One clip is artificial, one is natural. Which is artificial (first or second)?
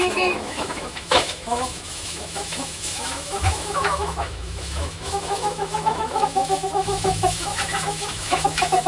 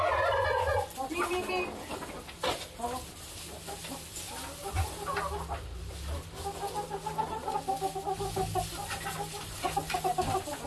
first